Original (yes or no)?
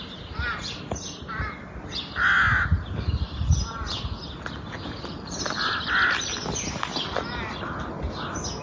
yes